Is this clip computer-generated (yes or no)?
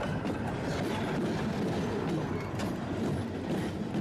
no